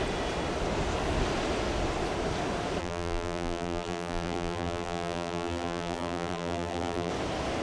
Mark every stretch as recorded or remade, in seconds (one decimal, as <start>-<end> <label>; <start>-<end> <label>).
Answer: 0.0-2.8 recorded; 2.8-7.1 remade; 7.1-7.6 recorded